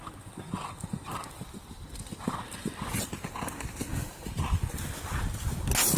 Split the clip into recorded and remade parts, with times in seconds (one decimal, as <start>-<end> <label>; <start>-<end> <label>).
0.0-1.3 recorded; 1.3-2.0 remade; 2.0-4.0 recorded; 4.0-5.5 remade; 5.5-6.0 recorded